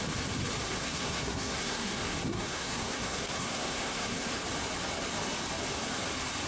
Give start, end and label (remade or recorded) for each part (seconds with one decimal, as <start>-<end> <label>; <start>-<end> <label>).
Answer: 0.0-0.8 recorded; 0.8-4.3 remade; 4.3-6.5 recorded